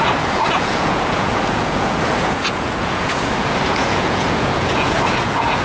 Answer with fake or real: fake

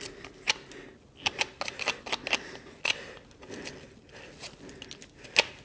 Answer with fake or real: real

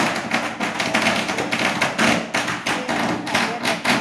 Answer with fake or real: real